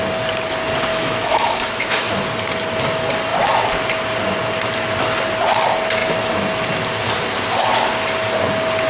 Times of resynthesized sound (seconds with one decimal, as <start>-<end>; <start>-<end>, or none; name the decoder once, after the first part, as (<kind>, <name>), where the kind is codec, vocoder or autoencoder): 0.9-2.1 (autoencoder, DAC-VAE)